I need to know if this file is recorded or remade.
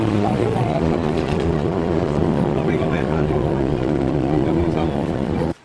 remade